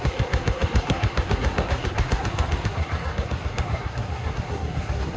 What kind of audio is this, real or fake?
fake